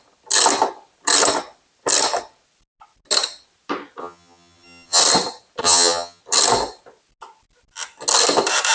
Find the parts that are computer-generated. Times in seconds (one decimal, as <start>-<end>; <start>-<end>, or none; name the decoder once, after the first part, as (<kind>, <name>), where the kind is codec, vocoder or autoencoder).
4.0-5.0 (vocoder, HiFi-GAN); 5.6-6.2